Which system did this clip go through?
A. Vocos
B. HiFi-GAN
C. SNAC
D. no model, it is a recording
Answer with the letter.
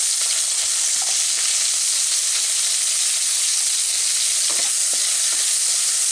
D